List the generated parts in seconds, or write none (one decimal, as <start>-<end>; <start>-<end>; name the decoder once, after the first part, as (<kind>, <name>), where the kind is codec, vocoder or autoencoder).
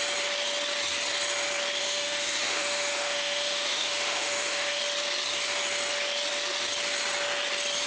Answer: 1.8-4.8 (autoencoder, DAC-VAE)